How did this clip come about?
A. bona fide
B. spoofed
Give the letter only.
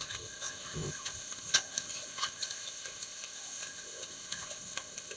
B